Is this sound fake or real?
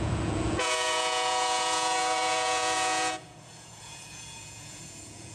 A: fake